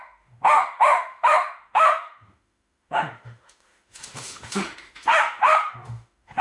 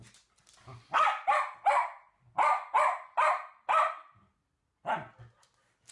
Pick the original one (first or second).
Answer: second